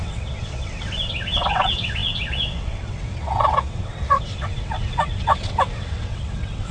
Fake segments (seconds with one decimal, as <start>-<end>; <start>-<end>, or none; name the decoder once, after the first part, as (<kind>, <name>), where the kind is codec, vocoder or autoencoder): 0.0-6.7 (vocoder, WaveNeXt)